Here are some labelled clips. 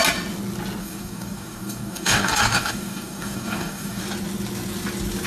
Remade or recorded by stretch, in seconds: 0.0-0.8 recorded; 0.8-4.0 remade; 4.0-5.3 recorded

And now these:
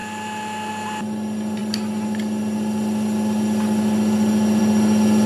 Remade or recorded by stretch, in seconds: 0.0-5.3 recorded

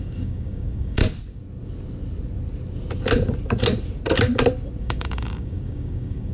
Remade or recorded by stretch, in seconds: 0.0-1.0 remade; 1.0-4.8 recorded; 4.8-6.3 remade

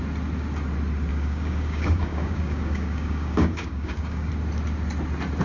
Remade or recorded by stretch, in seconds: 0.0-1.1 recorded; 1.1-4.3 remade; 4.3-5.4 recorded

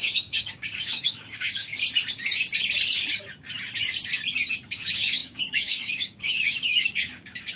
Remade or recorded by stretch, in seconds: 0.0-1.7 remade; 1.7-4.7 recorded; 4.7-7.6 remade

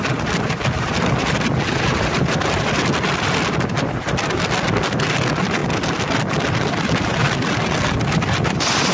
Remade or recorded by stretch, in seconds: 0.0-8.9 recorded